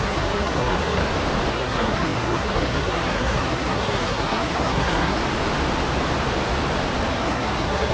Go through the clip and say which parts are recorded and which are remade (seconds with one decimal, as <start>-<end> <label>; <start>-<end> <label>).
0.0-1.0 remade; 1.0-1.5 recorded; 1.5-5.2 remade; 5.2-7.1 recorded; 7.1-7.9 remade